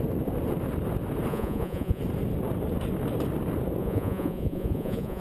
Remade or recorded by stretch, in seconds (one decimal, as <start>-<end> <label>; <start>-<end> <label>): 0.0-1.3 recorded; 1.3-2.0 remade; 2.0-3.8 recorded; 3.8-5.2 remade